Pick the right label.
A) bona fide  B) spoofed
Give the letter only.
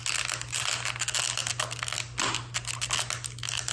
A